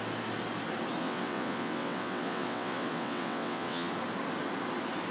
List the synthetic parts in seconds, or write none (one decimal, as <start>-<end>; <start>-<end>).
1.0-3.9